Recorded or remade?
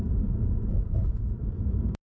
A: remade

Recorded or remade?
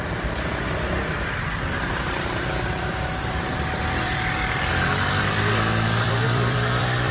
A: remade